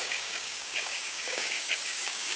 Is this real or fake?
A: fake